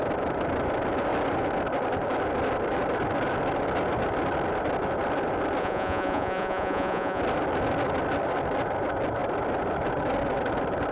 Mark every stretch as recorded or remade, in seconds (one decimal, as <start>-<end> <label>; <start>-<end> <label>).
0.0-5.6 recorded; 5.6-7.2 remade; 7.2-10.9 recorded